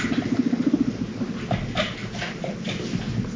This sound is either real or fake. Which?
real